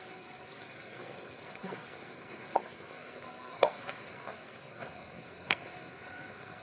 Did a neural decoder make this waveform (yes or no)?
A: yes